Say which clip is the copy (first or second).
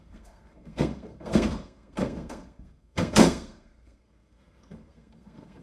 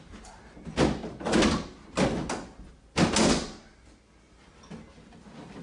first